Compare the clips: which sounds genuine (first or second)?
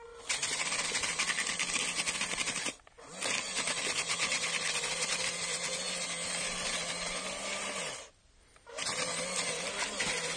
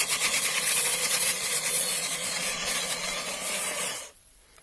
first